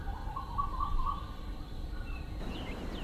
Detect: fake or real real